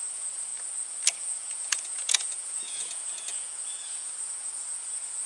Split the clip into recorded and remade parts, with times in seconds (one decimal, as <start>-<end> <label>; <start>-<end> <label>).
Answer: 0.0-0.5 remade; 0.5-1.2 recorded; 1.2-5.3 remade